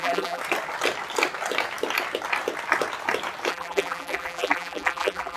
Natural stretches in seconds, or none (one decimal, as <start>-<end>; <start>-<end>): 0.4-3.5